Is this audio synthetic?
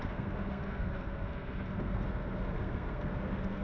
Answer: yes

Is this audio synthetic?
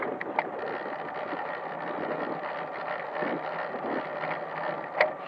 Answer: no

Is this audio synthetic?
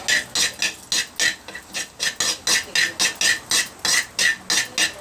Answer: no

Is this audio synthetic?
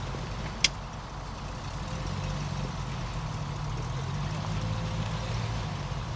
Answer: no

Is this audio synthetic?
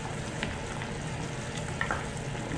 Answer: no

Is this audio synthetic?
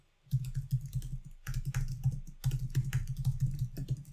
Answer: no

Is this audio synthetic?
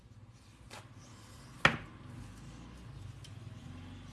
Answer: no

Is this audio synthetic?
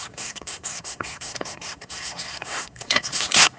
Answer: yes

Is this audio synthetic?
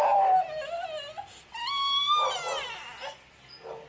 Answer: no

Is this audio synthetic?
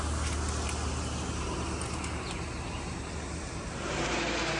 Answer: no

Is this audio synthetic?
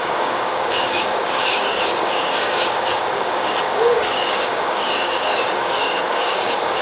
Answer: yes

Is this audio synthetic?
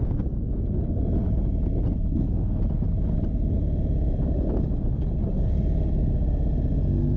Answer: no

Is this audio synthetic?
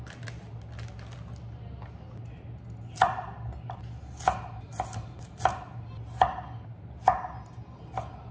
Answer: no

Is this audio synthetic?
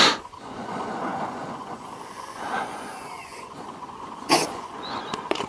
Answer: yes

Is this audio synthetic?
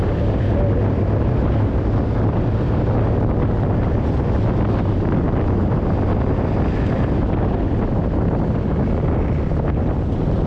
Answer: no